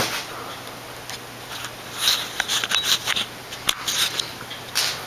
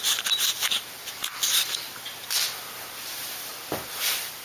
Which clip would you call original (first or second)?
first